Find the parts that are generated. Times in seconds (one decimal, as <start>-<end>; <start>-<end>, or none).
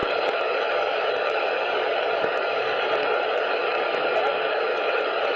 0.0-5.4